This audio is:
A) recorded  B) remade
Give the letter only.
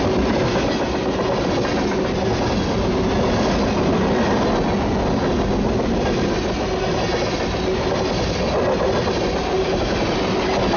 A